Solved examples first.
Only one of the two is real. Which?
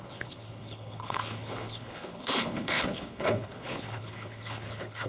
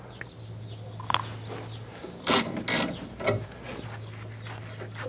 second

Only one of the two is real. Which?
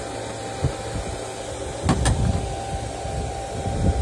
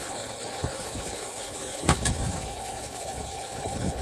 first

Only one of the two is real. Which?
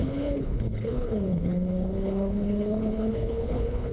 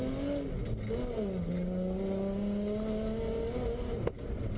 second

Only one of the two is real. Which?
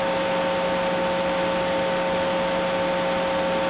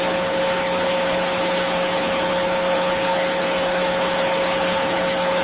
first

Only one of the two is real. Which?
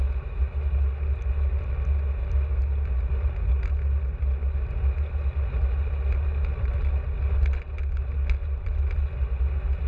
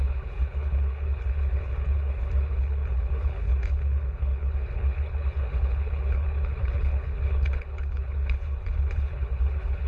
first